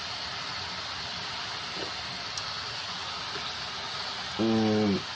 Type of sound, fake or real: real